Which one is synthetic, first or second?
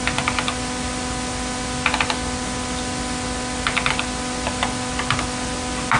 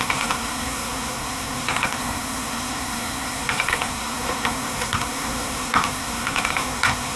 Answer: second